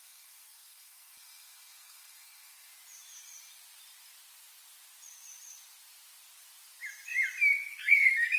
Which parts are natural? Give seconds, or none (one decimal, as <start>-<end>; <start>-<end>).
2.7-7.7